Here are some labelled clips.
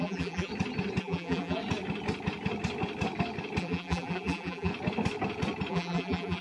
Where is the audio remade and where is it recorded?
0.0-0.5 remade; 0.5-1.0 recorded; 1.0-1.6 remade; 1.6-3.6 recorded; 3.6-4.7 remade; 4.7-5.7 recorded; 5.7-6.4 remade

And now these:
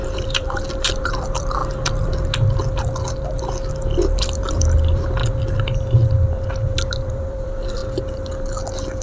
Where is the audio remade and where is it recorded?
0.0-1.6 remade; 1.6-4.5 recorded; 4.5-5.2 remade; 5.2-7.1 recorded; 7.1-7.8 remade; 7.8-9.0 recorded

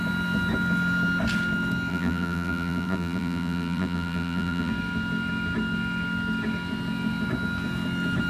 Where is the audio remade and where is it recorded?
0.0-1.9 recorded; 1.9-4.7 remade; 4.7-8.3 recorded

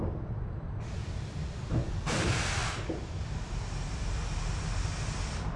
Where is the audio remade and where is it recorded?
0.0-5.6 recorded

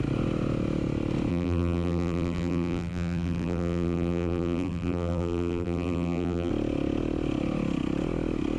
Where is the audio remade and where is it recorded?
0.0-1.3 recorded; 1.3-6.5 remade; 6.5-8.6 recorded

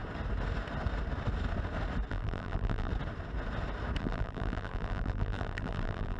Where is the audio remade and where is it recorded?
0.0-2.1 recorded; 2.1-2.9 remade; 2.9-4.0 recorded; 4.0-6.2 remade

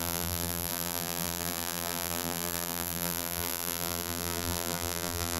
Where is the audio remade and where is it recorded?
0.0-5.4 remade